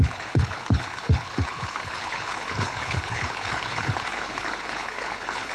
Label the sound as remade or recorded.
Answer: remade